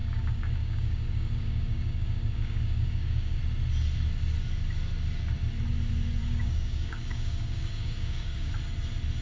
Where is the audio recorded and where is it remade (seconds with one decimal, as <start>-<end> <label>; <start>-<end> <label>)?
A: 0.0-3.4 remade; 3.4-6.2 recorded; 6.2-8.5 remade; 8.5-9.2 recorded